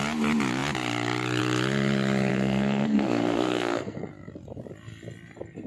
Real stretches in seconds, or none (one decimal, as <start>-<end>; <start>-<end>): 0.0-2.3; 4.1-5.7